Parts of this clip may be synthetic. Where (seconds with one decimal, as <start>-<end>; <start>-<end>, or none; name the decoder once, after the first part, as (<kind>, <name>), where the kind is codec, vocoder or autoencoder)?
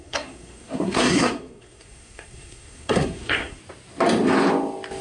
0.0-3.6 (codec, SNAC)